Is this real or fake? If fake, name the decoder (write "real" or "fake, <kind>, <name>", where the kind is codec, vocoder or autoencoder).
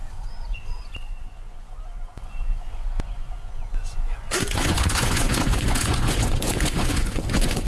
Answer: fake, vocoder, Vocos